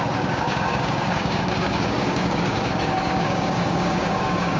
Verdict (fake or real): fake